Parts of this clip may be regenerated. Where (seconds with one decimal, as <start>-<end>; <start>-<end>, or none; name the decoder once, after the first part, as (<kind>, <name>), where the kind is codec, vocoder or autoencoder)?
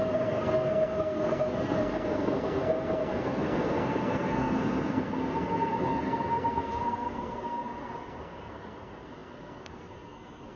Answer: 0.0-10.6 (codec, SNAC)